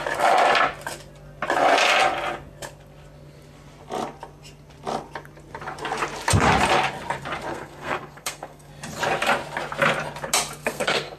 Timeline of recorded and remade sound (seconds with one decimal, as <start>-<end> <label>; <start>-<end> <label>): 0.0-7.5 recorded; 7.5-8.7 remade; 8.7-10.6 recorded; 10.6-11.2 remade